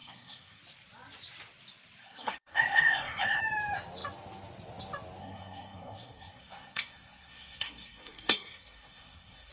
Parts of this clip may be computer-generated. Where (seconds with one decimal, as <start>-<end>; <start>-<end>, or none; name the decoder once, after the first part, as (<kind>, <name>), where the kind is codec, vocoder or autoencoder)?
0.0-0.6 (codec, SNAC); 2.0-3.4; 5.2-9.5